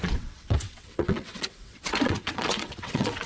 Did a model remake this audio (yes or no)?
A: yes